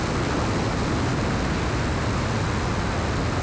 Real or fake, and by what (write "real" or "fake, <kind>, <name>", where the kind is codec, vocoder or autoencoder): real